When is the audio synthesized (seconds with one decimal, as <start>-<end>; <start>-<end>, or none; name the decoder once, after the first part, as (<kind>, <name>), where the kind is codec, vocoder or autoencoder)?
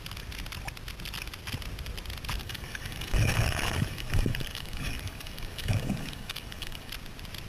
2.4-6.9 (codec, DAC)